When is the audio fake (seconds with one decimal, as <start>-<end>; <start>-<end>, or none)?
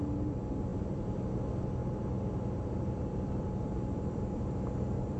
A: 0.7-1.3; 1.8-5.2